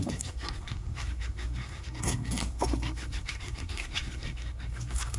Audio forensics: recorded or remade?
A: remade